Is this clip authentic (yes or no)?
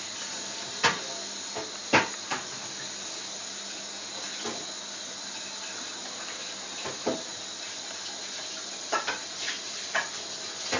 yes